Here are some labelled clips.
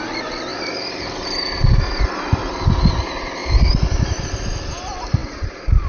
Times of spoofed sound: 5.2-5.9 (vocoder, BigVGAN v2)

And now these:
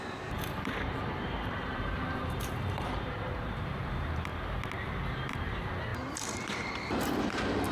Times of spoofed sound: 0.0-4.3 (vocoder, BigVGAN v2); 5.1-7.7